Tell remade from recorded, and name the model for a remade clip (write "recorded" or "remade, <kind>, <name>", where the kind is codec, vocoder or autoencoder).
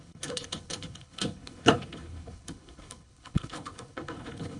remade, codec, HILCodec